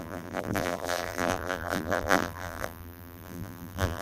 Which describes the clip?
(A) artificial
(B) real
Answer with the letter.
A